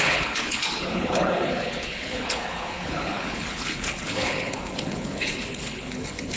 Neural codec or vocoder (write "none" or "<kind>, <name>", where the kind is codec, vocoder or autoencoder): codec, HILCodec